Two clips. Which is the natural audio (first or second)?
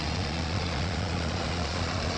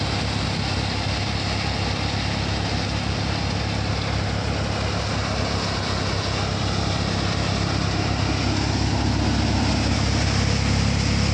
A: second